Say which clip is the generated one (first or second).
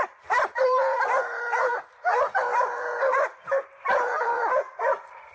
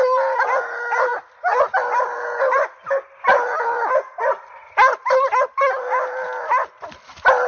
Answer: first